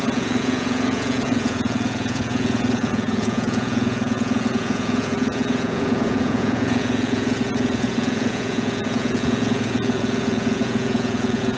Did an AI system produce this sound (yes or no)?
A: yes